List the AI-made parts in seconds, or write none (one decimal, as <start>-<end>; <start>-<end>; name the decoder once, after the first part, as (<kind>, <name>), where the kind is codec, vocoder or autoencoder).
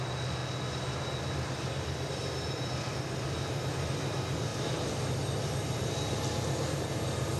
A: none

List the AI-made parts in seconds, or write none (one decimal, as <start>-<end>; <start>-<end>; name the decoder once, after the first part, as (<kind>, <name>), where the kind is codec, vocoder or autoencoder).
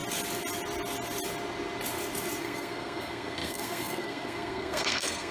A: 2.4-5.3 (codec, SNAC)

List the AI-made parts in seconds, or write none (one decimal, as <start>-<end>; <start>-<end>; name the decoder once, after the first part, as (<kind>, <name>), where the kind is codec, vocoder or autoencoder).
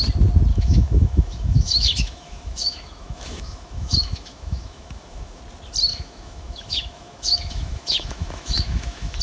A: 0.5-5.4 (autoencoder, DAC-VAE); 5.9-9.2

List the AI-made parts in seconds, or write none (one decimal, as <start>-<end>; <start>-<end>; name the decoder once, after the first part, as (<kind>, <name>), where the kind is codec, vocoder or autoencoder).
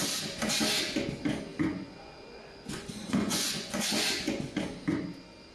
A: 1.5-4.6 (vocoder, Vocos)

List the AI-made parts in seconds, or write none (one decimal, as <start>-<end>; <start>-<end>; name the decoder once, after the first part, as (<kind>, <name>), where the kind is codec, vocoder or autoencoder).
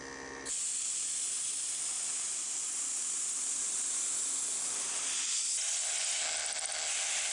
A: none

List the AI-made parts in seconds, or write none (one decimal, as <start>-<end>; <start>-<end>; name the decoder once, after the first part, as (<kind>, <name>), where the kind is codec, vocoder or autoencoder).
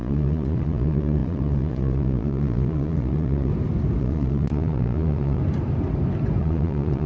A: 0.0-3.5 (vocoder, Vocos); 4.0-5.4; 6.4-7.1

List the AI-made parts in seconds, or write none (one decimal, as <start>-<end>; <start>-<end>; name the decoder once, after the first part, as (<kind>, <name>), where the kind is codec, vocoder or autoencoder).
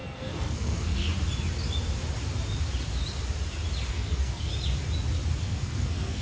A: 0.0-1.1 (codec, SNAC); 3.9-4.5; 5.4-6.2